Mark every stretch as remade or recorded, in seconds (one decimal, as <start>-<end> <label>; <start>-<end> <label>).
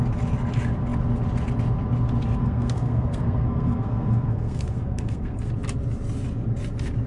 0.0-2.4 recorded; 2.4-5.5 remade; 5.5-7.1 recorded